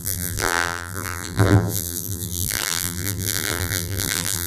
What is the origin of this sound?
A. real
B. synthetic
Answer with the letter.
B